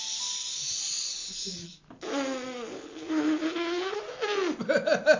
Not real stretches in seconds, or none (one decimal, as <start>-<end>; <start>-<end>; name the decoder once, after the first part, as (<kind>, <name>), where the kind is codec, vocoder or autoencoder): 2.7-4.0 (codec, HILCodec)